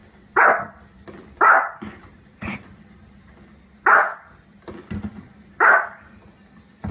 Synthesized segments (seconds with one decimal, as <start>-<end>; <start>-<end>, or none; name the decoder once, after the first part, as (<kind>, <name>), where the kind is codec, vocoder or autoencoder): 0.0-2.5 (vocoder, BigVGAN v2)